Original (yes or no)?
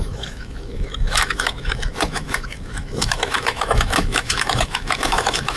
no